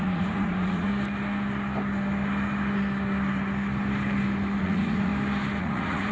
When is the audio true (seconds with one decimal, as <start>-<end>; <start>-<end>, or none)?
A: 0.9-4.6; 5.1-5.6